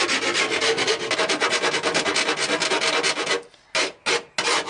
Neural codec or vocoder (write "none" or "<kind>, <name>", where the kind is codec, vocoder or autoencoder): none